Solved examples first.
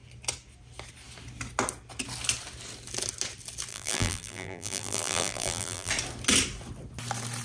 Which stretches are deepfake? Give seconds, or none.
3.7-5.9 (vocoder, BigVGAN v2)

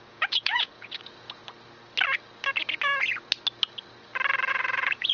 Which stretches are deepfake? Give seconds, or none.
0.0-1.4 (vocoder, Vocos); 4.5-5.1